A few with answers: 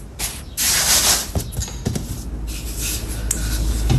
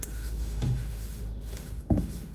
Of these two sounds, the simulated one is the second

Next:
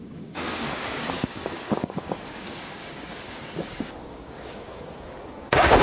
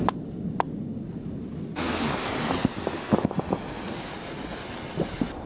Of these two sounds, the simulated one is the first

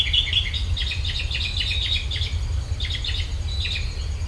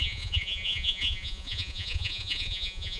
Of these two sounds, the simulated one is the second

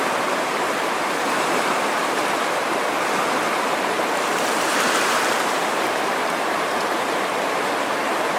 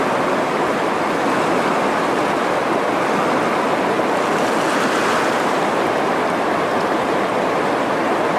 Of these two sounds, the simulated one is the first